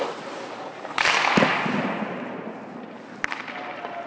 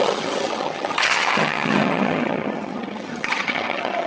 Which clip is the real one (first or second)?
first